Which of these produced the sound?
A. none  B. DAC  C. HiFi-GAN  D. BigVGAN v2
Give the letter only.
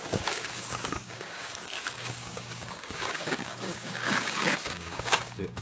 B